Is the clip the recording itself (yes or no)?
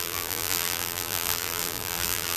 no